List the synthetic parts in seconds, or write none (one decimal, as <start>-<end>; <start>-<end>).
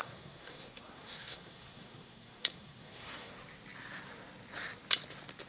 0.0-3.3